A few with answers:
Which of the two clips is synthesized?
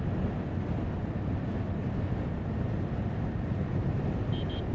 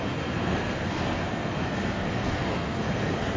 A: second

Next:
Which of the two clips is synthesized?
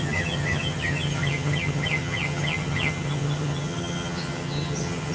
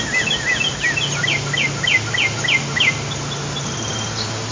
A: first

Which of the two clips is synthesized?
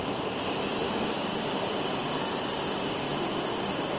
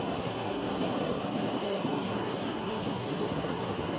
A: second